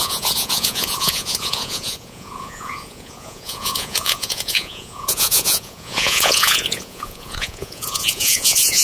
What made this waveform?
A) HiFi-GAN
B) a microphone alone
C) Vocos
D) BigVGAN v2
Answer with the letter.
C